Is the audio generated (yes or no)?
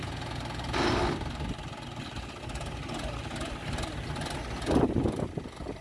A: no